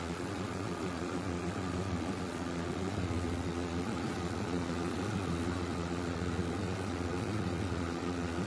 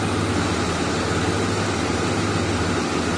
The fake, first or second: first